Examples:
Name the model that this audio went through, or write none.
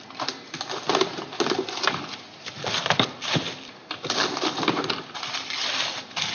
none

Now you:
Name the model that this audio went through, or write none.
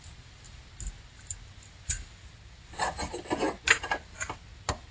none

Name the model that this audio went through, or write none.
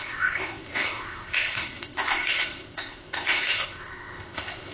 codec, ZipCodec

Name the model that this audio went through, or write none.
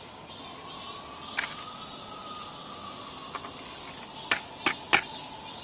none